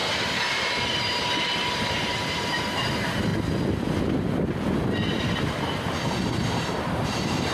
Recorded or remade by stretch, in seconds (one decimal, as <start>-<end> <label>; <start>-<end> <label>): 0.0-3.3 remade; 3.3-5.2 recorded; 5.2-7.5 remade

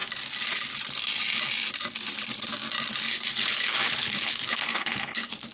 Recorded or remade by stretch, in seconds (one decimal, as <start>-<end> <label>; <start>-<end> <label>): 0.0-3.3 recorded; 3.3-5.5 remade

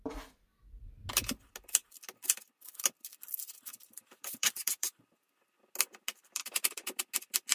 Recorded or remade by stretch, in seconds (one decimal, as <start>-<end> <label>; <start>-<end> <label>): 0.0-3.7 recorded; 3.7-5.3 remade; 5.3-6.1 recorded; 6.1-7.0 remade; 7.0-7.5 recorded

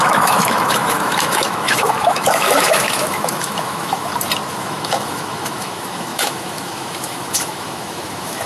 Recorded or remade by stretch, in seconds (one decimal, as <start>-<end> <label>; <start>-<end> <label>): 0.0-4.1 remade; 4.1-4.6 recorded; 4.6-8.5 remade

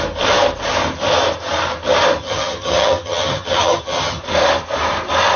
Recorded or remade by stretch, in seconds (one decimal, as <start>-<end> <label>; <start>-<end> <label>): 0.0-2.2 recorded; 2.2-4.2 remade; 4.2-5.4 recorded

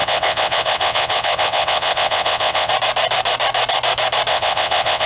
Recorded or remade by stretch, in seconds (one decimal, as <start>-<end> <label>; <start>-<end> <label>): 0.0-2.7 remade; 2.7-4.3 recorded; 4.3-5.1 remade

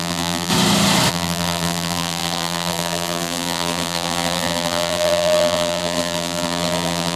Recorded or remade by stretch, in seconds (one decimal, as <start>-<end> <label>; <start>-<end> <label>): 0.0-0.5 remade; 0.5-1.1 recorded; 1.1-7.2 remade